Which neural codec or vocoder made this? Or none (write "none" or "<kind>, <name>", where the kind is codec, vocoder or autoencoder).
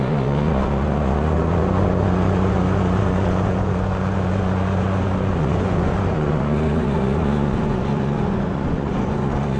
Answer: vocoder, Vocos